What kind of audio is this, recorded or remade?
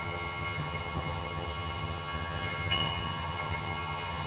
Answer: remade